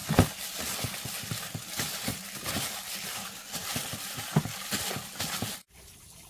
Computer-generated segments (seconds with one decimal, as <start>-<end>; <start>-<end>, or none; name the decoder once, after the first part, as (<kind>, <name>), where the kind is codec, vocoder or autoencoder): none